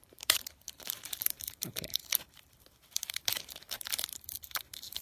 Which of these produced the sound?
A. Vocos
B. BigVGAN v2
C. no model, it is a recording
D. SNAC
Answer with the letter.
B